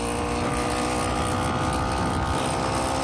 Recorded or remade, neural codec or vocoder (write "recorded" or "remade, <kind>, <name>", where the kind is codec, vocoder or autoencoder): recorded